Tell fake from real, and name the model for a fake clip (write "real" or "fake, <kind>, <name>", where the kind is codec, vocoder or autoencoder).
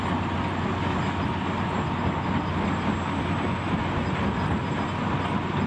real